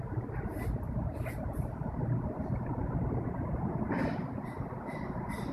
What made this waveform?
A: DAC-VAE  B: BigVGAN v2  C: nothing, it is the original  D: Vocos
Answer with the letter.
C